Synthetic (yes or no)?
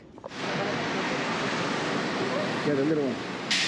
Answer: no